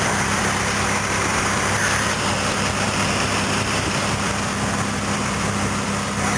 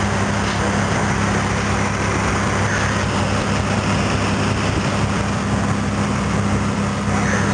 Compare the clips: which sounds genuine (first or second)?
second